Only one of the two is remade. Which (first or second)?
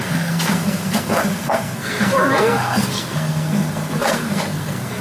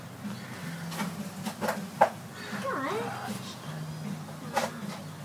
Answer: first